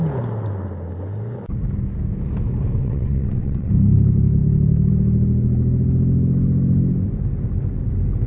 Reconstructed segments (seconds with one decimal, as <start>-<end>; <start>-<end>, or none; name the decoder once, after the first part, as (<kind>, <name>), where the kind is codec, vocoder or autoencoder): 2.8-3.7 (vocoder, WaveNeXt)

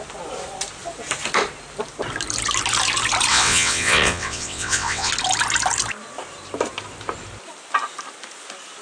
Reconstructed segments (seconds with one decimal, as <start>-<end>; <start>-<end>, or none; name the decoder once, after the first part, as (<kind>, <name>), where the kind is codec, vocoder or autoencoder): 3.3-5.1 (vocoder, WaveNeXt)